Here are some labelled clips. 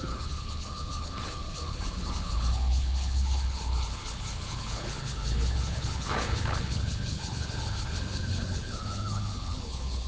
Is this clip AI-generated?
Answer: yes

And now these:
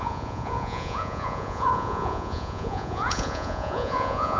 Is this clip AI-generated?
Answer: yes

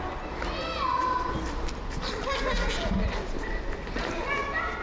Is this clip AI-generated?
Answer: no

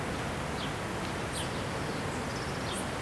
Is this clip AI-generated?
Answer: no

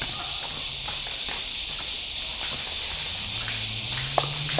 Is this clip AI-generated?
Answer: no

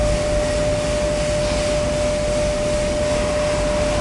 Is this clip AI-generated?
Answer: no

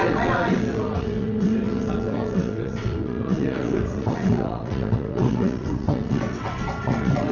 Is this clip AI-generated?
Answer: yes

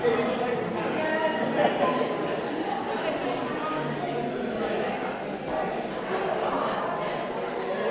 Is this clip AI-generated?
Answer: no